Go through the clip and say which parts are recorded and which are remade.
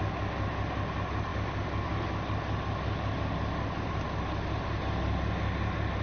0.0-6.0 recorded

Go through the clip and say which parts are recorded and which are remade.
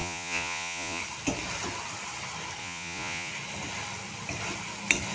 0.0-1.0 remade; 1.0-2.6 recorded; 2.6-3.3 remade; 3.3-5.1 recorded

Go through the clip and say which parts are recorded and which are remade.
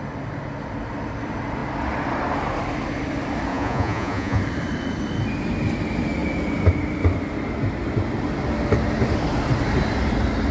0.0-3.5 recorded; 3.5-4.4 remade; 4.4-10.5 recorded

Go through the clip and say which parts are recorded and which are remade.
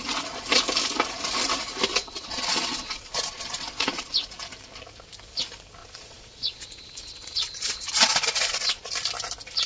0.0-1.9 recorded; 1.9-4.1 remade; 4.1-5.8 recorded; 5.8-8.9 remade; 8.9-9.7 recorded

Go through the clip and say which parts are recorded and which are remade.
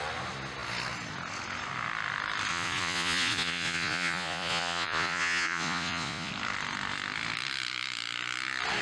0.0-2.5 recorded; 2.5-6.3 remade; 6.3-8.8 recorded